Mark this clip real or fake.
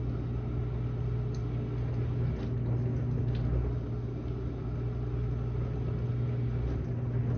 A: real